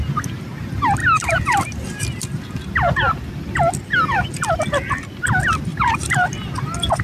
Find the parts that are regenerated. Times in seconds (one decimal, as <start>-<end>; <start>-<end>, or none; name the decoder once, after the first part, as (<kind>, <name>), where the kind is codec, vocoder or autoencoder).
1.0-3.3 (vocoder, BigVGAN v2); 5.7-6.4